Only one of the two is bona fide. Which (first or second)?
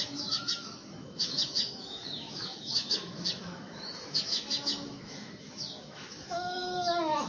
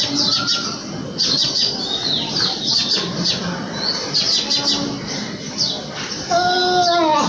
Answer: second